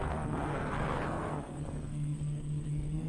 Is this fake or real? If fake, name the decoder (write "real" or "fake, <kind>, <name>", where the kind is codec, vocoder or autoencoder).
fake, codec, SNAC